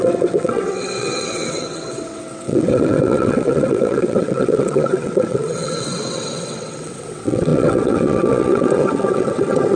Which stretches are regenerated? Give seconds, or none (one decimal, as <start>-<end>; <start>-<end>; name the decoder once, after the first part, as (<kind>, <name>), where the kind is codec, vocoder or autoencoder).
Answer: 0.0-9.8 (vocoder, WaveNeXt)